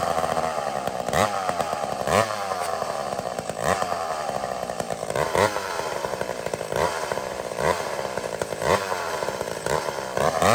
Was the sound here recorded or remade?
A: remade